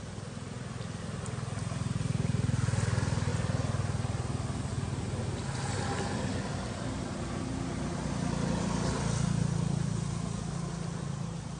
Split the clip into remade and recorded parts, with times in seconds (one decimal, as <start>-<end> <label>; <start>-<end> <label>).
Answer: 0.0-11.6 recorded